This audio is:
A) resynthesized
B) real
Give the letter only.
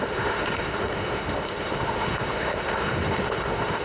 A